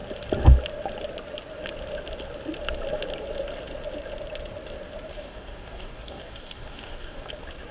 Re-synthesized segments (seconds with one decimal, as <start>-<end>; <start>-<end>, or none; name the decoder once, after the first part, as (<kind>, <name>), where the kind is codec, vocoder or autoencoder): 5.1-7.3 (codec, DAC)

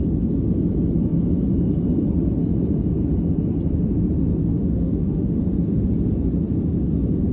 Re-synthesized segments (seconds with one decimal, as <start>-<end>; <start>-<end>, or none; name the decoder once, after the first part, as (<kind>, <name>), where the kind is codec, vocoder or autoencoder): 4.4-5.4 (autoencoder, DAC-VAE)

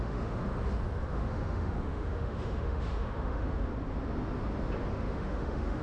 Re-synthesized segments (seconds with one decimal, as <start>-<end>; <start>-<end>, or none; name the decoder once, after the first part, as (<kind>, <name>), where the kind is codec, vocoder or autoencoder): 0.0-0.4 (autoencoder, DAC-VAE); 1.1-3.7; 4.9-5.8

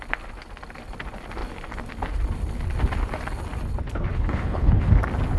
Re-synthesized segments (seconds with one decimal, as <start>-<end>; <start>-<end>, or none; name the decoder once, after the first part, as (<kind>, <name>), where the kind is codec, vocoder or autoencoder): 4.1-4.9 (codec, HILCodec)

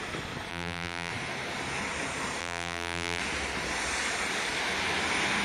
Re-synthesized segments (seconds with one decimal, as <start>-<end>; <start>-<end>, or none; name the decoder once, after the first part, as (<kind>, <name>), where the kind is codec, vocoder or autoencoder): 0.5-1.1 (vocoder, BigVGAN v2); 2.4-3.2

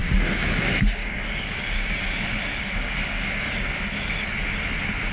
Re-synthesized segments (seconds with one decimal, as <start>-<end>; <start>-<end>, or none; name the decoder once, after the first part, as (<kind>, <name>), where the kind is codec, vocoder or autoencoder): 0.0-0.6 (codec, DAC); 1.0-4.1